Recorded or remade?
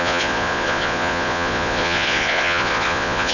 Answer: remade